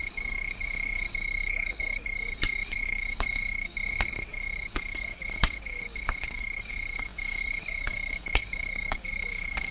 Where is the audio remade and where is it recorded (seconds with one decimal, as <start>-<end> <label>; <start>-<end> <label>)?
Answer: 0.0-9.7 remade